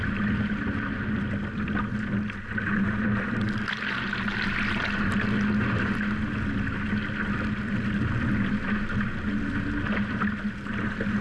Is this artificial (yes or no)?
no